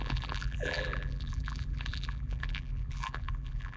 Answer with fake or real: fake